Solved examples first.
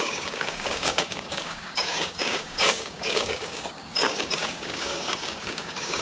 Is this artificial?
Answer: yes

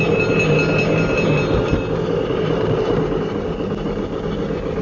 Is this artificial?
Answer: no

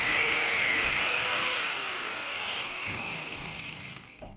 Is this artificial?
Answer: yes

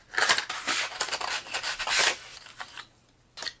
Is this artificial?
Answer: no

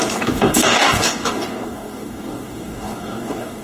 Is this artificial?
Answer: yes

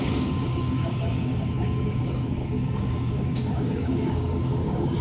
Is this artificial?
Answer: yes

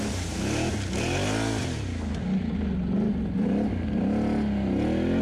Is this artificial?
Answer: no